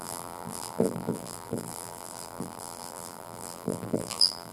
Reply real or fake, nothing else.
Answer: fake